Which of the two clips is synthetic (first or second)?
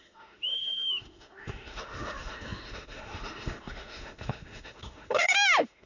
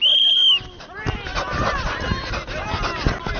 first